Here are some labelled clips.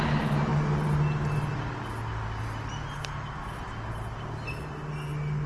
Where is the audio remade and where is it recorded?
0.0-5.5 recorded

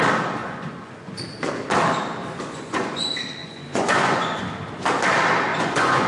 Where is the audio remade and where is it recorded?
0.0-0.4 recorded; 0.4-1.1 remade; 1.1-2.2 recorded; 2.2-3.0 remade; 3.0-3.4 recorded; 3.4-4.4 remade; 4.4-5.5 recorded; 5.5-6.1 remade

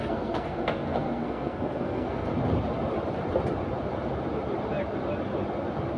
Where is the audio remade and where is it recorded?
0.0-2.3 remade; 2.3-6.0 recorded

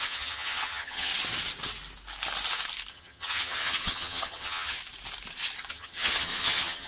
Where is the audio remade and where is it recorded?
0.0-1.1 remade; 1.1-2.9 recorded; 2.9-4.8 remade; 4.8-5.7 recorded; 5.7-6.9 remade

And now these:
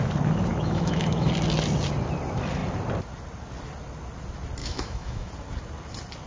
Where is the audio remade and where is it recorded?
0.0-0.5 recorded; 0.5-1.3 remade; 1.3-4.6 recorded; 4.6-5.3 remade; 5.3-6.3 recorded

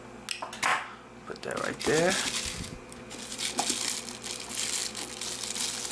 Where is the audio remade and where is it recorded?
0.0-5.9 recorded

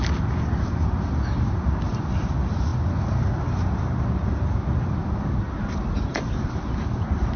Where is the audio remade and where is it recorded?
0.0-7.4 recorded